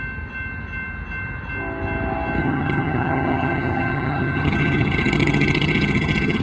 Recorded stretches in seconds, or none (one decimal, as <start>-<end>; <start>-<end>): 0.0-2.4